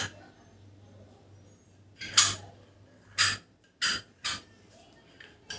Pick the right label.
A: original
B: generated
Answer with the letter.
A